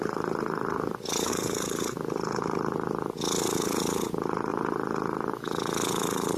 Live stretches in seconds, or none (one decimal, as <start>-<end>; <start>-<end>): 0.0-6.4